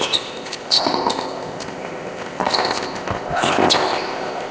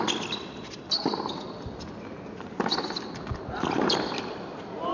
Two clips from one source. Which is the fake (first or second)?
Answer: first